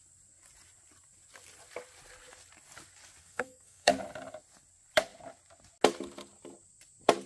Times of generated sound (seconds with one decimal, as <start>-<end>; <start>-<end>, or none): 3.2-3.9

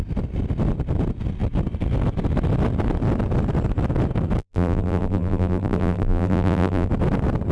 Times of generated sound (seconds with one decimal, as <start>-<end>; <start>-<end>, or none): 4.4-6.9

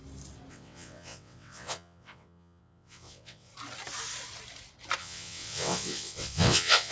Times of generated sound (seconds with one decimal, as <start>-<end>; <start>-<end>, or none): 0.5-3.5; 5.0-6.9

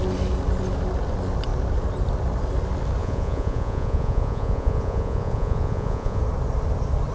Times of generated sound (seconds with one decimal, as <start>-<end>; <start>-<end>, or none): 3.0-6.2

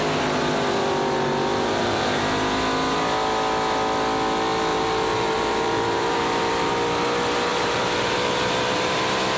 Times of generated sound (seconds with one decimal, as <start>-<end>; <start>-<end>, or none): 1.5-2.2; 4.7-6.7; 7.5-8.9

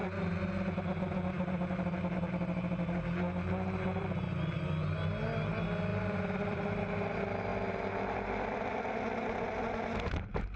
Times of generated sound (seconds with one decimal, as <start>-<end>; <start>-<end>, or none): 5.9-6.8